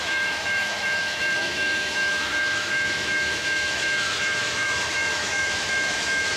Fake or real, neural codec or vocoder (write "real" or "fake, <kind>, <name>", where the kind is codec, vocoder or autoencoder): fake, autoencoder, DAC-VAE